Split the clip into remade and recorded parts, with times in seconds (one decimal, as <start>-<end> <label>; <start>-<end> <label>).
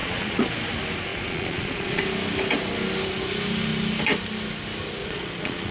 0.0-0.5 remade; 0.5-1.1 recorded; 1.1-2.0 remade; 2.0-5.0 recorded; 5.0-5.7 remade